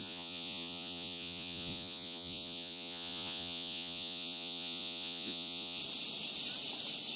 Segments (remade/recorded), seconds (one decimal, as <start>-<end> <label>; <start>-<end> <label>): 0.0-5.8 remade; 5.8-7.2 recorded